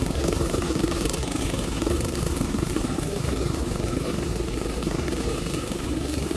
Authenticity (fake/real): fake